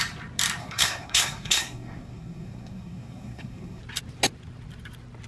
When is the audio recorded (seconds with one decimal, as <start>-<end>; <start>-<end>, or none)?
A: 0.0-0.6; 3.8-5.3